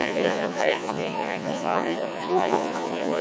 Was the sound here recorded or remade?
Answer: remade